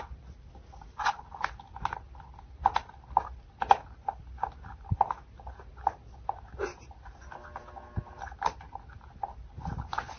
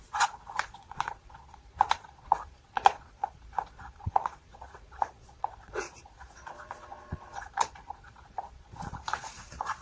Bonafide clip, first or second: first